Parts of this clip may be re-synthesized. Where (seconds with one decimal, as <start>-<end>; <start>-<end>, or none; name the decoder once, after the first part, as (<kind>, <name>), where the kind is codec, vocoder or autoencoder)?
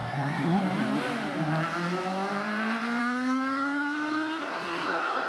0.0-0.6 (codec, SNAC); 3.0-5.3